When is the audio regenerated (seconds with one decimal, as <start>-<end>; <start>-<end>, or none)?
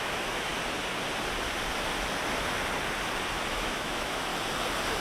0.0-0.5; 3.5-4.3